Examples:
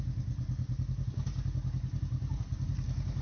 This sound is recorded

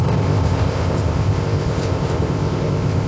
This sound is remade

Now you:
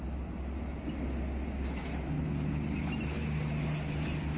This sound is recorded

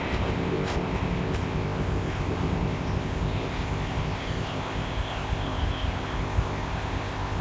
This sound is remade